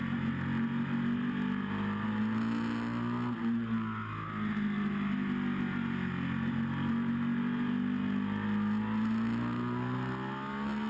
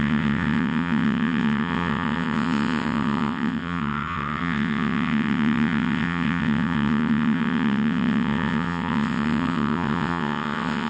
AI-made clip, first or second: second